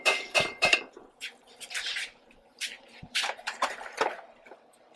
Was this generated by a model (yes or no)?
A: yes